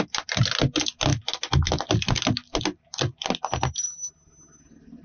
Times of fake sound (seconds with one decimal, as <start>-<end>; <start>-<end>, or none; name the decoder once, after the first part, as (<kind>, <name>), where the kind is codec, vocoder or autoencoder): none